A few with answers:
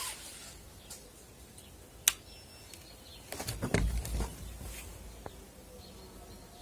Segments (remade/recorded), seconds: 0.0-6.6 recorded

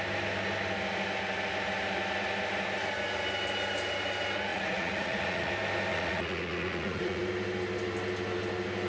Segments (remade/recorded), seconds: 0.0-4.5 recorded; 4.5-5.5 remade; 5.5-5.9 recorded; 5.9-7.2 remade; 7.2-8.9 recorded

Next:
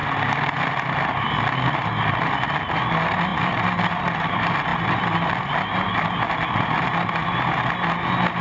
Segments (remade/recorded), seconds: 0.0-8.4 recorded

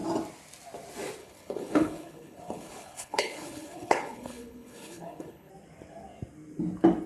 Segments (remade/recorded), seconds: 0.0-1.2 recorded; 1.2-5.5 remade; 5.5-7.1 recorded

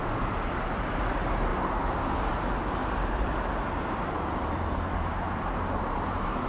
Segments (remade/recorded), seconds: 0.0-1.5 recorded; 1.5-2.0 remade; 2.0-2.8 recorded; 2.8-6.5 remade

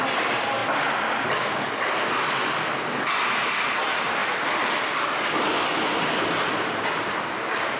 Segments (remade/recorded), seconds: 0.0-7.8 recorded

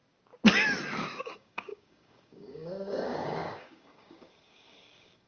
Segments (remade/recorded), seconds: 0.0-1.2 recorded; 1.2-5.3 remade